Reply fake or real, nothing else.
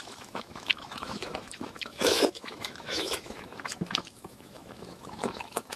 fake